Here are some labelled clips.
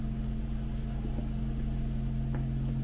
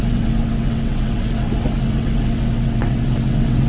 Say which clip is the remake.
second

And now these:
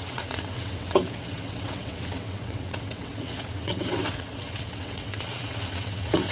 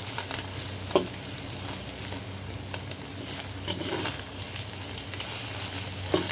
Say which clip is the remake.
first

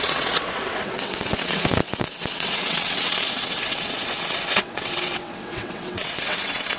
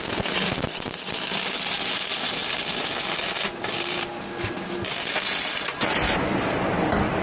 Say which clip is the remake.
first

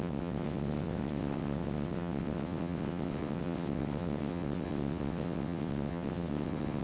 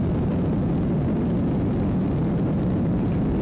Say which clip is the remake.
first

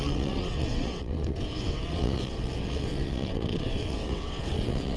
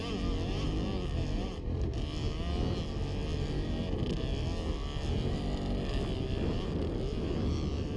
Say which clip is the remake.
first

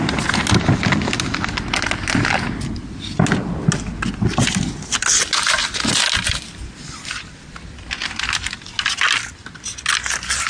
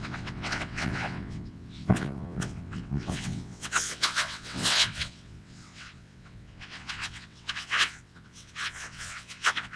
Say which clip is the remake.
second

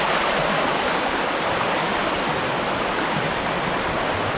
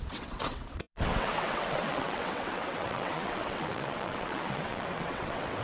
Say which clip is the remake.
second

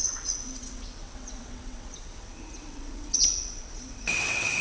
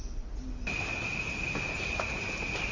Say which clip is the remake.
first